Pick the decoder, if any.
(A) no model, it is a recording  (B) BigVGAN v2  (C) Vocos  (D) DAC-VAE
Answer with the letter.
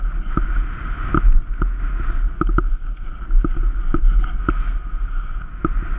A